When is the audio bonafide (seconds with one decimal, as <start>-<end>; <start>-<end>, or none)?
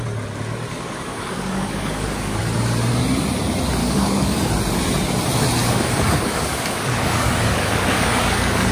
0.0-0.7; 2.4-3.8; 4.5-5.6